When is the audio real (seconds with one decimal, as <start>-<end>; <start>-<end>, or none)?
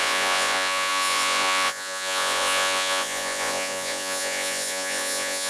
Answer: none